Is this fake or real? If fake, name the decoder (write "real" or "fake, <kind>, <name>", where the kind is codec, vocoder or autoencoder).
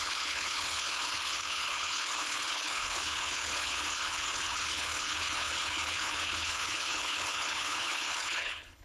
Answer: fake, codec, HILCodec